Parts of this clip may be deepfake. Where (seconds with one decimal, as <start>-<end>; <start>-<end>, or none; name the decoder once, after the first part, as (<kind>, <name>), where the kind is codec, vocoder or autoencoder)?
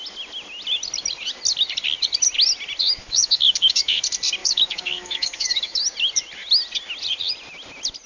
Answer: 3.0-4.0 (autoencoder, DAC-VAE); 4.4-5.8